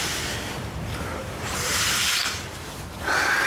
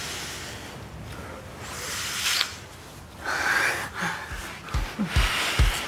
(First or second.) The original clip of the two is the second